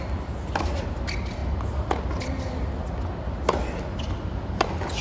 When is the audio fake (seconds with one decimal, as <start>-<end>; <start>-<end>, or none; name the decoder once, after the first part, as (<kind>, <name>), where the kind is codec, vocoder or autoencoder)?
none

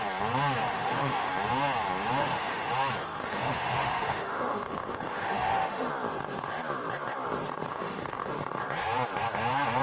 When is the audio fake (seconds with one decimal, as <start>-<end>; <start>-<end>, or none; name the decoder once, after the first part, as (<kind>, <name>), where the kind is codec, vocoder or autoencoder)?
0.6-1.3 (autoencoder, DAC-VAE); 2.2-2.7; 3.2-5.9; 7.7-8.3

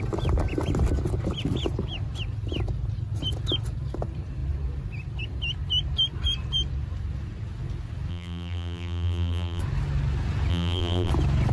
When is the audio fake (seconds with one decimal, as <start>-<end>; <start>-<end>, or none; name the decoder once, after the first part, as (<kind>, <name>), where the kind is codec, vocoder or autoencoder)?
8.1-9.6 (vocoder, BigVGAN v2); 10.5-11.1

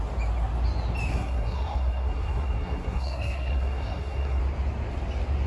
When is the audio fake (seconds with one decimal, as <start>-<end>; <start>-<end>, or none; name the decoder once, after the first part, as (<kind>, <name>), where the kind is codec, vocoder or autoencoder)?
1.1-4.4 (codec, SNAC)

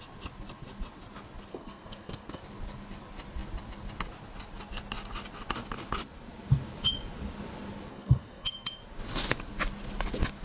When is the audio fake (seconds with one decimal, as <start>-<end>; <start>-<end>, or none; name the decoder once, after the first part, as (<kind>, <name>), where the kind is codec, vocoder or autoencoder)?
1.5-2.4 (codec, SNAC); 7.9-8.8

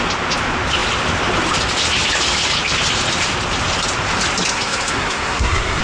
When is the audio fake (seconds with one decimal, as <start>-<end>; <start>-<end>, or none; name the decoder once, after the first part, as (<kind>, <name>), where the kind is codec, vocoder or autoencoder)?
4.5-5.8 (codec, SNAC)

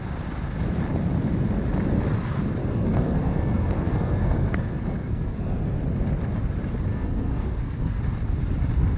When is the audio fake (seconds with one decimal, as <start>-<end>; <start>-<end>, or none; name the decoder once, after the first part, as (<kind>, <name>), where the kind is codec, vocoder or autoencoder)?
2.6-5.8 (codec, SNAC); 6.9-8.0

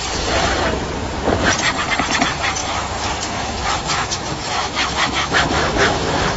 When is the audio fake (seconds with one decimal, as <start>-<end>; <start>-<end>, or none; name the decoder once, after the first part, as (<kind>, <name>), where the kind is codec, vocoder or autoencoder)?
2.6-6.4 (autoencoder, DAC-VAE)